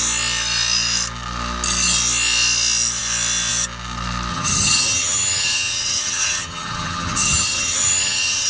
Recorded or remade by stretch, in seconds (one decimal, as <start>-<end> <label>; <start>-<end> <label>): 0.0-4.3 recorded; 4.3-8.5 remade